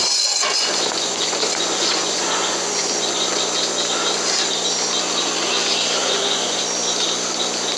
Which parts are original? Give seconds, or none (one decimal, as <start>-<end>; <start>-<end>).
3.4-6.0; 6.6-7.8